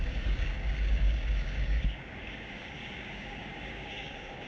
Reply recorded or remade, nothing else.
remade